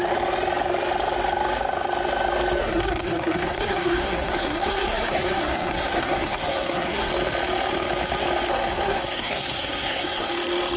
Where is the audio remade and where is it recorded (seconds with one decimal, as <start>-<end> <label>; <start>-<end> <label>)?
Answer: 0.0-2.6 recorded; 2.6-7.1 remade; 7.1-8.5 recorded; 8.5-10.3 remade; 10.3-10.8 recorded